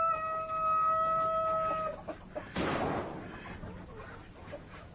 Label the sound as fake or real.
real